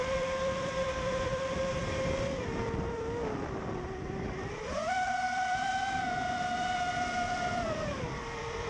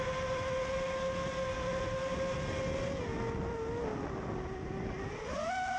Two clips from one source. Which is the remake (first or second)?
first